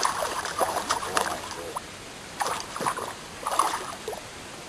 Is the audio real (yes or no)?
no